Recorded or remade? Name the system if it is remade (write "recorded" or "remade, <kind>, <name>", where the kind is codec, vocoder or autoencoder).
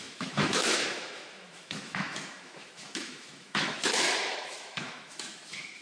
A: remade, autoencoder, DAC-VAE